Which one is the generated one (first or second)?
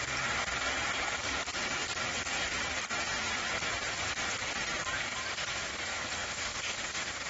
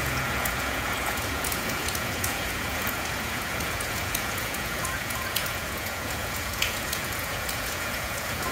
second